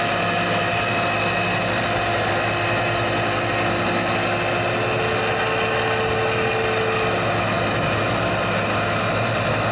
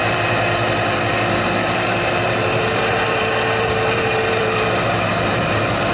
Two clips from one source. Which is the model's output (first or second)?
second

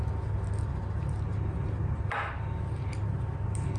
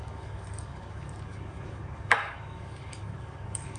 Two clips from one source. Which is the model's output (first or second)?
second